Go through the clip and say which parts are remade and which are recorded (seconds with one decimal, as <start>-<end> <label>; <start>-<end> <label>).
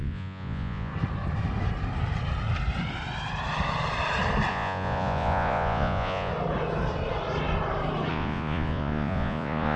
0.0-0.9 remade; 0.9-4.5 recorded; 4.5-6.3 remade; 6.3-8.1 recorded; 8.1-9.8 remade